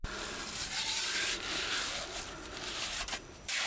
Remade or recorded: remade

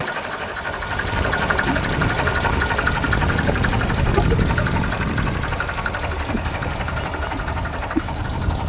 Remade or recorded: recorded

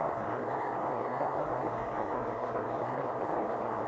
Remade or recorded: remade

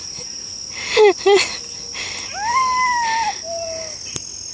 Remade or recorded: recorded